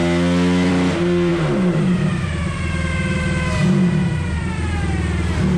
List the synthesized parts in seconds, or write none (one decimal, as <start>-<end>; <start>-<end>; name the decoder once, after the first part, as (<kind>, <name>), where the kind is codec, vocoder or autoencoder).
1.3-2.3 (vocoder, BigVGAN v2)